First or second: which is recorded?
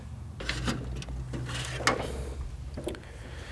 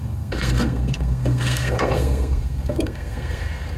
first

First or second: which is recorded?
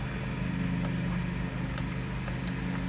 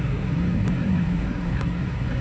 first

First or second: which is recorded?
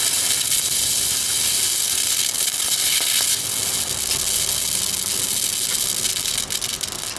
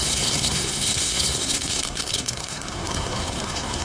first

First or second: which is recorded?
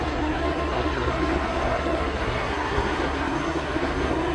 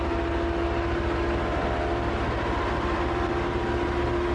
second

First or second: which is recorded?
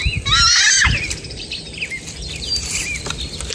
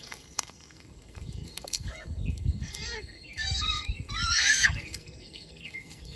first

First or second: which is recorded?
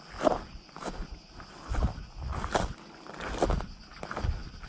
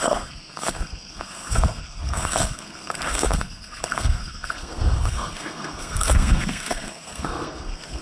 first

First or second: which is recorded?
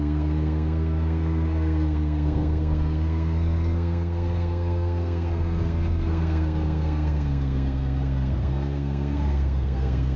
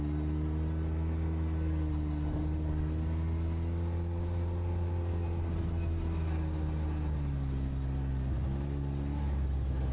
second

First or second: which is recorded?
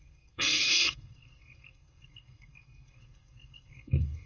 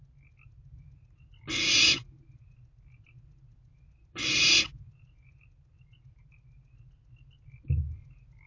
second